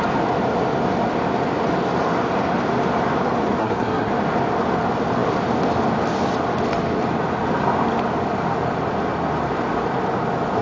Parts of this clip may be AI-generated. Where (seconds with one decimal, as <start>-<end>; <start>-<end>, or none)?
3.6-4.1